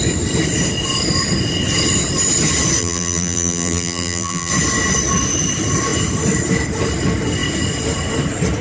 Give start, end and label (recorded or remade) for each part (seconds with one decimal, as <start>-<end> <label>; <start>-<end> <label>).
0.0-2.8 recorded; 2.8-4.5 remade; 4.5-8.6 recorded